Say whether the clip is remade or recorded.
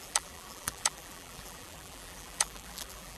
remade